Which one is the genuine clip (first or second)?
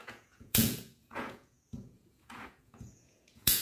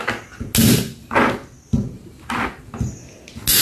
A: second